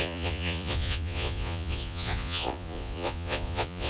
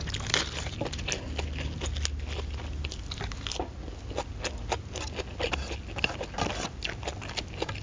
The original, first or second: second